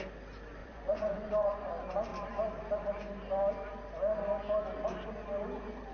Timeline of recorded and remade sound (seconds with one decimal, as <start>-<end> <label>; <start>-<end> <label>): 0.0-0.6 recorded; 0.6-1.7 remade; 1.7-5.9 recorded